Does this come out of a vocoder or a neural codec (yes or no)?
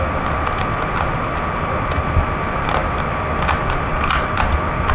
no